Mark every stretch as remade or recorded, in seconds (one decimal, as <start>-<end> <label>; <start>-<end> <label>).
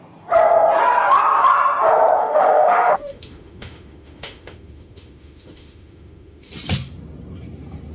0.0-2.2 recorded; 2.2-6.5 remade; 6.5-7.9 recorded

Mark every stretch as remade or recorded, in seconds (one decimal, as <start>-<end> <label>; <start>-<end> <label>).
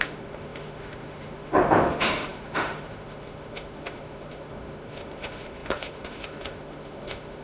0.0-7.4 remade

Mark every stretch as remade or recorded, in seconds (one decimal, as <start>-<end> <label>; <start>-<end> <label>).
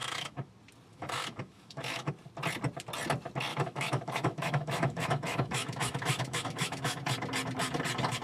0.0-0.5 remade; 0.5-0.9 recorded; 0.9-2.1 remade; 2.1-3.5 recorded; 3.5-7.0 remade; 7.0-8.2 recorded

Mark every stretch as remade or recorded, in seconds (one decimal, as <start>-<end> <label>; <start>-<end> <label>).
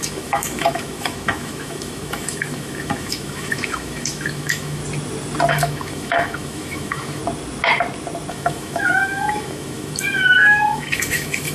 0.0-4.8 remade; 4.8-5.5 recorded; 5.5-7.2 remade; 7.2-8.3 recorded; 8.3-11.5 remade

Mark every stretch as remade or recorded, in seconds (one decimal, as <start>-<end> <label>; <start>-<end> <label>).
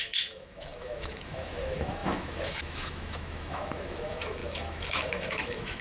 0.0-5.8 remade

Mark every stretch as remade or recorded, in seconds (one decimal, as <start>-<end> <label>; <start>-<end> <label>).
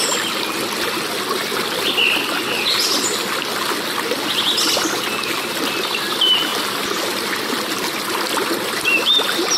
0.0-9.6 recorded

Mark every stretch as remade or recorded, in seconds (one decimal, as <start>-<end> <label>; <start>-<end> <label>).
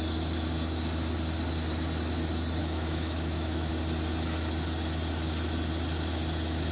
0.0-2.6 recorded; 2.6-3.7 remade; 3.7-6.7 recorded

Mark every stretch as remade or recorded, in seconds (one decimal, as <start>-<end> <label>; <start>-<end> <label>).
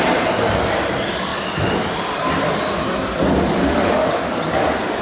0.0-3.6 recorded; 3.6-4.2 remade; 4.2-5.0 recorded